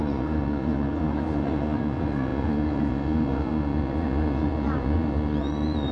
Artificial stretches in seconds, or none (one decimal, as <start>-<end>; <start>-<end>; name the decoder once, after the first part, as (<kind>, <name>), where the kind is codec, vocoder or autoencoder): 0.0-5.9 (vocoder, Vocos)